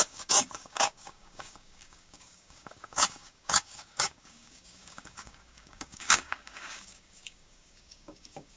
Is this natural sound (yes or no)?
no